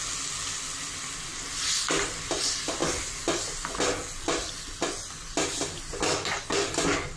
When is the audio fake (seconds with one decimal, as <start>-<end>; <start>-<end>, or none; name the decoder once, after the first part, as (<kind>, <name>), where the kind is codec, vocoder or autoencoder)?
none